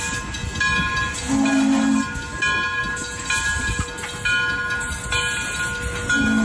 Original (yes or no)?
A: yes